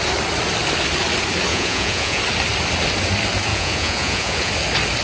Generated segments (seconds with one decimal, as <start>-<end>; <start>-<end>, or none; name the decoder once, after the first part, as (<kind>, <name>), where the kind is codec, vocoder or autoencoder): 1.5-2.2 (vocoder, Vocos); 3.5-4.5